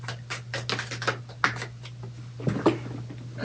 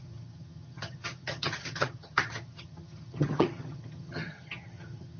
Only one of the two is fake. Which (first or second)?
second